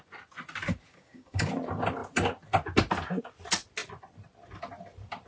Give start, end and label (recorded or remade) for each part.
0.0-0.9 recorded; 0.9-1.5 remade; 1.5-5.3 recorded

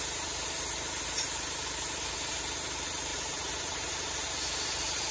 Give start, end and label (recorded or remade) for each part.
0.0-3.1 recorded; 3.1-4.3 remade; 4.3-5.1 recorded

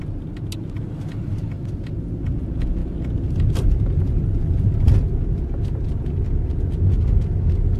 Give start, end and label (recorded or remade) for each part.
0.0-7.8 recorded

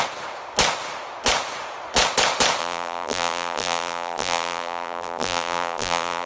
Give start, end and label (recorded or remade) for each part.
0.0-2.6 recorded; 2.6-6.3 remade